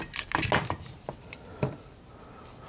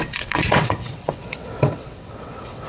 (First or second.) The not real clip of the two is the second